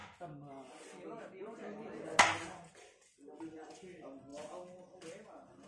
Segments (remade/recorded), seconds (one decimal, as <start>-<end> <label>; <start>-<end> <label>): 0.0-5.7 recorded